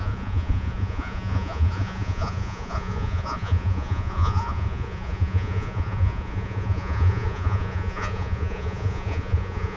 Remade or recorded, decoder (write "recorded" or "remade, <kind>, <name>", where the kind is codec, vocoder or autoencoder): remade, vocoder, Vocos